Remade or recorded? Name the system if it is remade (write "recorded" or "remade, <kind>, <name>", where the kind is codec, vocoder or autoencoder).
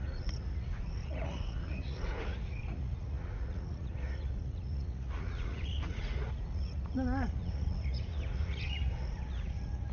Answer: remade, vocoder, Vocos